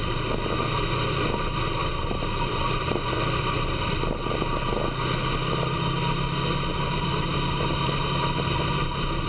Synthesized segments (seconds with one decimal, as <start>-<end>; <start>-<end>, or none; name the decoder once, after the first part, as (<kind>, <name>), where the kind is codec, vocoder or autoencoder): none